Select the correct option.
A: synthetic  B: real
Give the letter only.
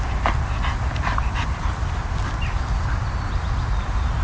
B